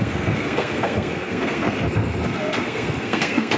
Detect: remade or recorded remade